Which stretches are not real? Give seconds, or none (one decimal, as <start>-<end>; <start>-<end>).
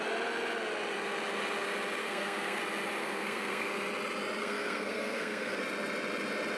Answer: 2.0-2.6; 3.0-3.7; 4.4-5.6